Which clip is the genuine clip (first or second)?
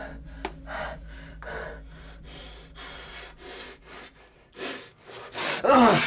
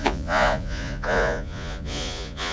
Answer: first